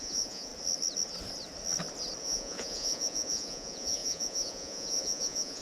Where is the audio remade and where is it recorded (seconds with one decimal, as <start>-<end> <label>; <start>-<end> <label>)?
0.0-0.5 remade; 0.5-2.2 recorded; 2.2-5.6 remade